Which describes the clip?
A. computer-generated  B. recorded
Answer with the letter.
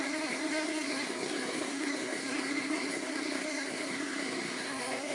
A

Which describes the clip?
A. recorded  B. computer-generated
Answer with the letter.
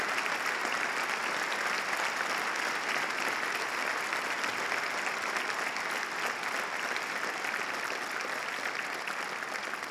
A